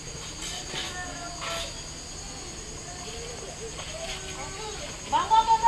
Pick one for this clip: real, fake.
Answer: real